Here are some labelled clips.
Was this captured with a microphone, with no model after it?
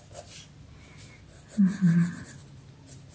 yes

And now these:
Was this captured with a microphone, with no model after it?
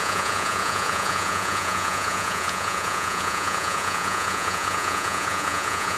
no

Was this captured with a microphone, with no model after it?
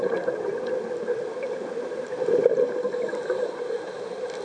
yes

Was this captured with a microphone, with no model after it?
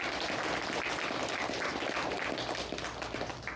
yes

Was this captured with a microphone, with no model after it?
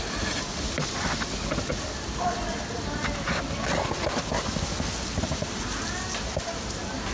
yes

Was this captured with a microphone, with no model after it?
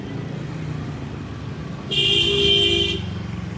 yes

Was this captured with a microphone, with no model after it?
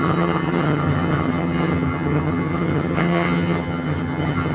no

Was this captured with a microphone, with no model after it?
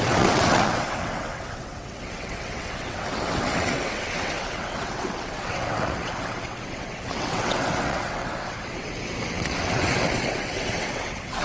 no